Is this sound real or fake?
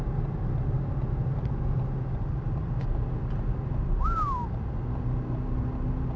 real